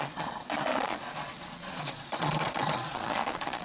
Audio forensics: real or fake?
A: fake